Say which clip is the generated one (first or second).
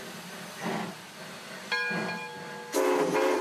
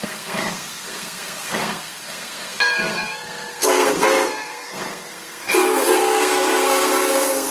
second